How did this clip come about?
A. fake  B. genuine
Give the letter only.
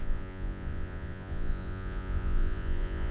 A